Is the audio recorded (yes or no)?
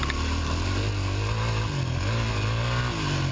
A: yes